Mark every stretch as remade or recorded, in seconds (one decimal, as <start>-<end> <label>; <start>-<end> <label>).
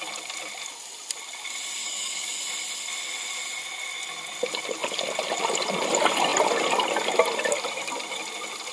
0.0-1.8 recorded; 1.8-2.4 remade; 2.4-8.7 recorded